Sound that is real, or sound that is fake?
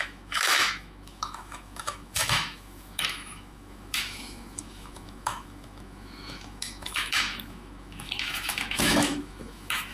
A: fake